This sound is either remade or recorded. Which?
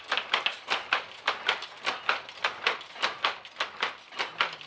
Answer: recorded